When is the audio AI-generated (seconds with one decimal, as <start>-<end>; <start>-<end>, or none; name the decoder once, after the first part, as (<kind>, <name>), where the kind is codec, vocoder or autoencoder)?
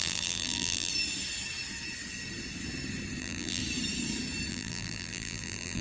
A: 0.0-0.9 (vocoder, BigVGAN v2); 3.2-3.6; 4.5-5.8